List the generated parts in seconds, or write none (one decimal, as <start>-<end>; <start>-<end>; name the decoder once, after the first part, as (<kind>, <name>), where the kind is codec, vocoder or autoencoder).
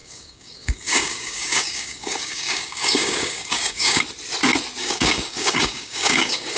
0.0-4.0 (codec, DAC); 4.8-6.6